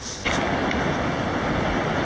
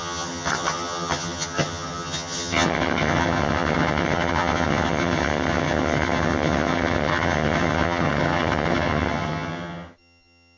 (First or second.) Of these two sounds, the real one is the first